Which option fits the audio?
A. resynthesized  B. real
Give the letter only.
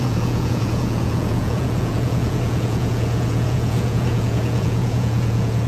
A